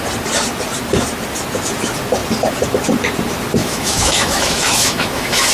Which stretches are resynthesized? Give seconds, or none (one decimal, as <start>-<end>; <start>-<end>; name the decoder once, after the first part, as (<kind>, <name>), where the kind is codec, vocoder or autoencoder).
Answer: 3.6-5.5 (autoencoder, DAC-VAE)